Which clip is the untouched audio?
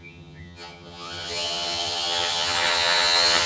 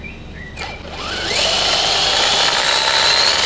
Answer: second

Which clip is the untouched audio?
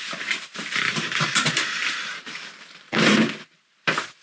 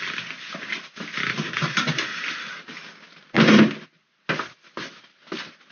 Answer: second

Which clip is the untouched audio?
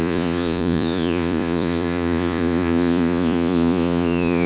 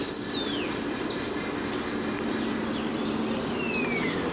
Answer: second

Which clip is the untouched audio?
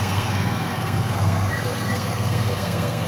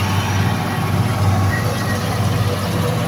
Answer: second